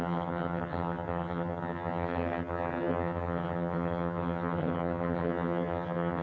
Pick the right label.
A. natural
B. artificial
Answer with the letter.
B